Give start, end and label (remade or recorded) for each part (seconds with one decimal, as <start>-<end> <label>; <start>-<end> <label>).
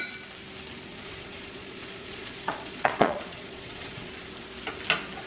0.0-0.9 recorded; 0.9-4.1 remade; 4.1-5.3 recorded